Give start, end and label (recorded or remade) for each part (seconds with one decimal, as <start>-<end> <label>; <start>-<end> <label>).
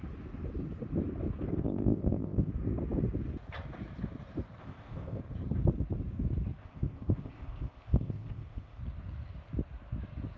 0.0-1.5 recorded; 1.5-2.5 remade; 2.5-4.6 recorded; 4.6-5.2 remade; 5.2-6.6 recorded; 6.6-8.8 remade; 8.8-10.4 recorded